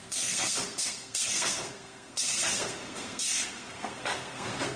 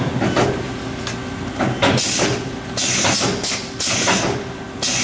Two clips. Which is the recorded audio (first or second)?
second